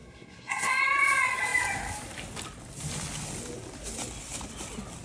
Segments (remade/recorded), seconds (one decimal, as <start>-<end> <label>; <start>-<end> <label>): 0.0-0.7 remade; 0.7-5.0 recorded